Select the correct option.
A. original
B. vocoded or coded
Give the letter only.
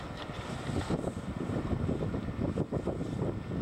A